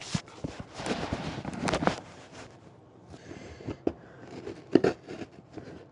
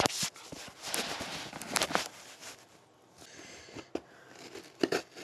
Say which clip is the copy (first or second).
first